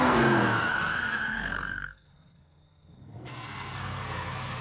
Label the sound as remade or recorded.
remade